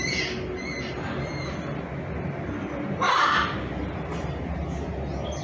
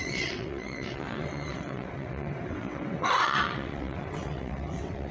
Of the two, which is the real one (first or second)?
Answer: first